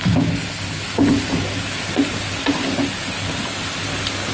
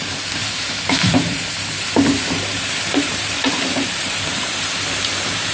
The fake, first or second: second